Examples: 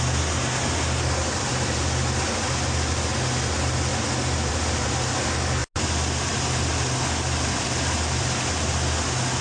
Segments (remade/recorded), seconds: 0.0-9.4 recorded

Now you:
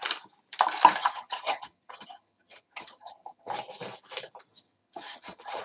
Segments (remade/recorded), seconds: 0.0-1.0 recorded; 1.0-3.5 remade; 3.5-4.5 recorded; 4.5-5.6 remade

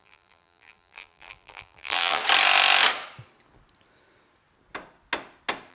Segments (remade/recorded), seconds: 0.0-2.2 remade; 2.2-5.7 recorded

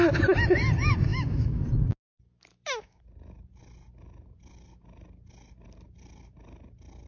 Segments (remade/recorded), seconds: 0.0-1.1 recorded; 1.1-1.6 remade; 1.6-2.5 recorded; 2.5-3.0 remade; 3.0-7.1 recorded

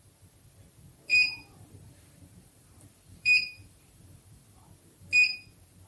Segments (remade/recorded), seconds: 0.0-1.1 recorded; 1.1-4.6 remade; 4.6-5.9 recorded